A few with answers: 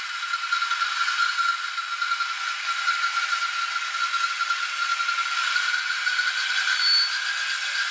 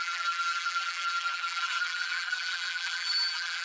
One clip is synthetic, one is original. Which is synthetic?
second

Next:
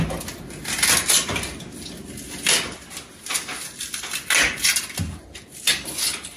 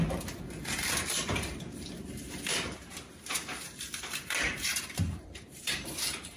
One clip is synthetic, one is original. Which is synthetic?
second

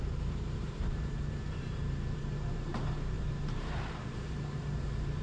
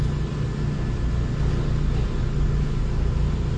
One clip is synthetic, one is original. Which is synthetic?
first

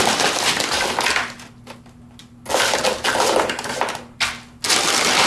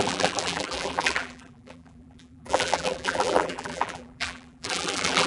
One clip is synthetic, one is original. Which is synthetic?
second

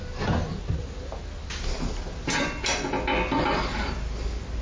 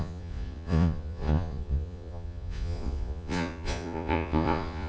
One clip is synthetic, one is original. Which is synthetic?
second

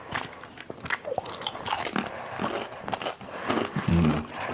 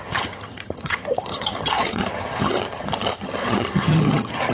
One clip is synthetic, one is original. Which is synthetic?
second